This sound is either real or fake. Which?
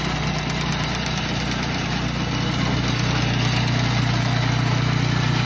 real